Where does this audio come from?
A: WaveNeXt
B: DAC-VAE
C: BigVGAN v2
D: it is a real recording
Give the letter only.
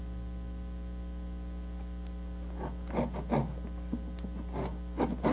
D